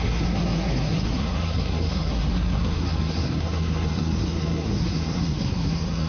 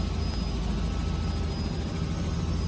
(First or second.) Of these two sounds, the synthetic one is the first